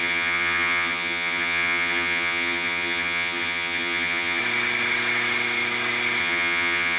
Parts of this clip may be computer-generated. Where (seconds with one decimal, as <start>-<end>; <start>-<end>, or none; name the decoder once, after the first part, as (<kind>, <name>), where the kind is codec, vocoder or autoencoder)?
0.0-4.4 (vocoder, HiFi-GAN); 6.2-7.0